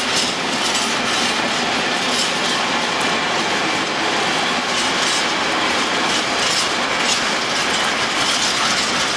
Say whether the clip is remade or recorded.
recorded